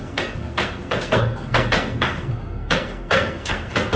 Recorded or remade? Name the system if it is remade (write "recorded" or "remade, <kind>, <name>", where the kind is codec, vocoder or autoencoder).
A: remade, codec, SNAC